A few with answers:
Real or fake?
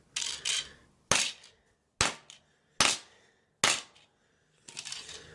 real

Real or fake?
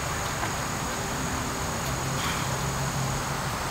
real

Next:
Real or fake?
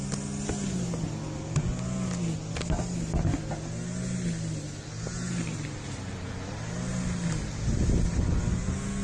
real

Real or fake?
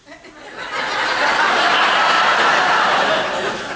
real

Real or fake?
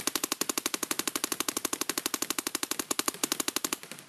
real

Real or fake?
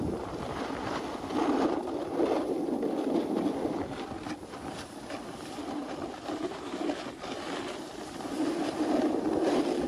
real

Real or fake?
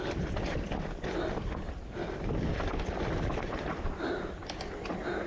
real